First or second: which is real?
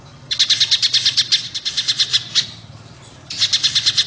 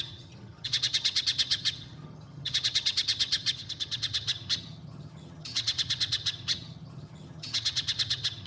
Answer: first